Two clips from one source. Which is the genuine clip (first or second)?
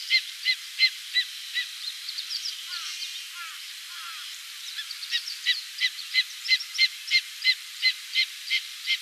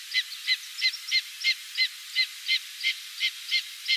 second